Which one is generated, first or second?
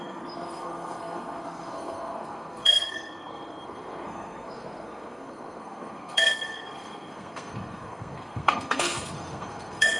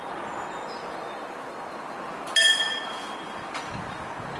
first